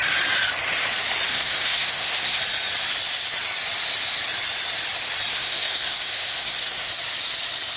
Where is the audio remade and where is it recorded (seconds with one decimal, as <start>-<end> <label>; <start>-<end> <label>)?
0.0-1.3 recorded; 1.3-2.4 remade; 2.4-5.3 recorded; 5.3-6.9 remade; 6.9-7.8 recorded